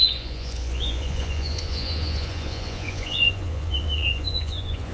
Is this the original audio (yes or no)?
no